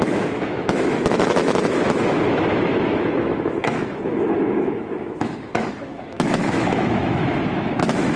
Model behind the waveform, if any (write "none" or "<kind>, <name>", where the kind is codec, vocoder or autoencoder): autoencoder, DAC-VAE